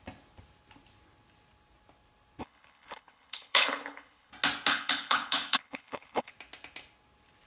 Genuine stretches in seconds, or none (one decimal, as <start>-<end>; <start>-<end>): 0.0-2.4; 4.3-4.7; 6.3-7.5